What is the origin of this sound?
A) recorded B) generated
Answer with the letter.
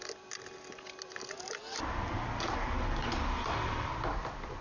A